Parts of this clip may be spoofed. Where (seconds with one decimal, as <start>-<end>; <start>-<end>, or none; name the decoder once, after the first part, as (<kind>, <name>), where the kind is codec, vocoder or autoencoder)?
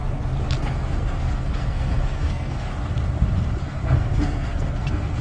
0.6-2.7 (codec, SNAC); 3.6-5.2